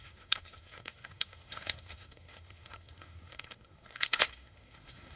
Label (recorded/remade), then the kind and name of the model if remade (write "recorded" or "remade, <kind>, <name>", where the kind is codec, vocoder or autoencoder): remade, codec, SNAC